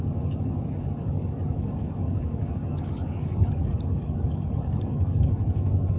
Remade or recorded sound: remade